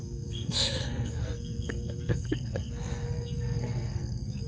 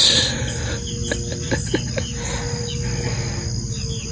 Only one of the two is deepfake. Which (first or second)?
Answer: first